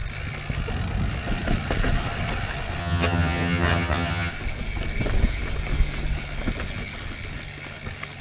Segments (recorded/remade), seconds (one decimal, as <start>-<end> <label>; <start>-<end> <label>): 0.0-2.8 recorded; 2.8-4.3 remade; 4.3-8.2 recorded